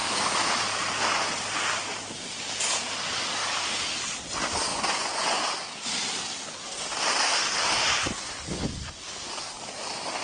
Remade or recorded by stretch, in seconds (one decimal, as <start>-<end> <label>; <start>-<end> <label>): 0.0-4.7 recorded; 4.7-5.4 remade; 5.4-10.2 recorded